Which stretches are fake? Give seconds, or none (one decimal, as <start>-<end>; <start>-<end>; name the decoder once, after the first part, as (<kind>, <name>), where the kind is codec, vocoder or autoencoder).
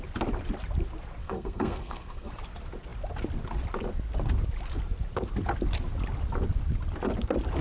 1.2-2.3 (codec, SNAC)